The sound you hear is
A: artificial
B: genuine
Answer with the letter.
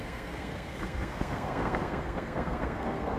A